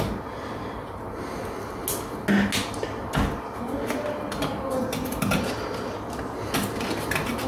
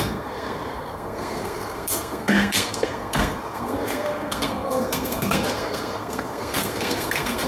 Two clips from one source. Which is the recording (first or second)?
first